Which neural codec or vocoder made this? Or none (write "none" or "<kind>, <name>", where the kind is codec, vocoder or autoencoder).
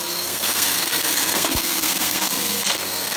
codec, SNAC